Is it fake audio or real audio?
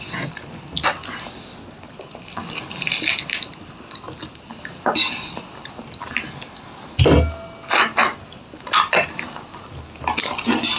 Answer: real